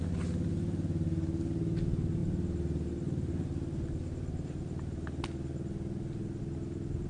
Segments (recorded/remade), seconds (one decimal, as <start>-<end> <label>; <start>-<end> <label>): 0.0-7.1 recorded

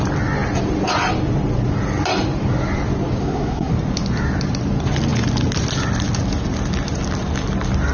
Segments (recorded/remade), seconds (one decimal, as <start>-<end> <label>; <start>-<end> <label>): 0.0-3.2 recorded; 3.2-3.7 remade; 3.7-7.9 recorded

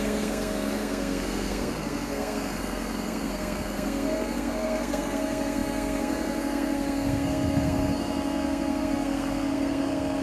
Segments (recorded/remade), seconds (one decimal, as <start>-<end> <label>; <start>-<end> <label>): 0.0-10.2 remade

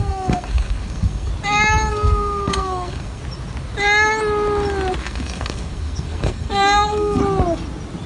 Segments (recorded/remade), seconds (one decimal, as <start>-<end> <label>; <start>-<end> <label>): 0.0-1.3 remade; 1.3-1.9 recorded; 1.9-3.2 remade; 3.2-5.0 recorded; 5.0-7.2 remade; 7.2-8.1 recorded

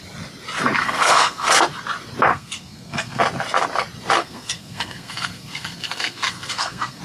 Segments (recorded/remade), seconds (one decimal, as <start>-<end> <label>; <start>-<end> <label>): 0.0-0.8 recorded; 0.8-1.5 remade; 1.5-2.3 recorded; 2.3-3.2 remade; 3.2-4.2 recorded; 4.2-7.0 remade

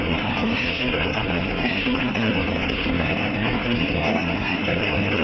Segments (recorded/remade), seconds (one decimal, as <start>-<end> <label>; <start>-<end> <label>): 0.0-5.2 remade

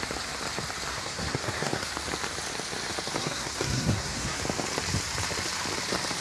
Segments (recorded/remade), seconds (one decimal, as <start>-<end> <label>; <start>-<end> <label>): 0.0-0.9 recorded; 0.9-1.9 remade; 1.9-3.2 recorded; 3.2-4.4 remade; 4.4-6.2 recorded